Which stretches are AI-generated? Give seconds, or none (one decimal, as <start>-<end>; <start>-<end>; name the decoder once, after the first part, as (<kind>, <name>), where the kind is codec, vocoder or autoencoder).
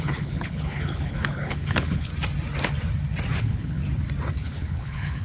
0.0-2.1 (codec, HILCodec); 3.4-3.8; 4.3-5.2